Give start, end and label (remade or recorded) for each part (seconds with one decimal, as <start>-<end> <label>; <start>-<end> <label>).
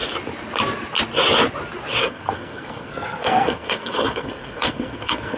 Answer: 0.0-2.0 recorded; 2.0-5.4 remade